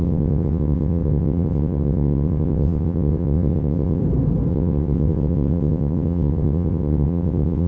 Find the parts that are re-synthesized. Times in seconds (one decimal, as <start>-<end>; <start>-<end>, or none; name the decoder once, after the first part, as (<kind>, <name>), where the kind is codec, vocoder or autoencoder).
0.0-4.0 (vocoder, WaveNeXt); 4.5-7.7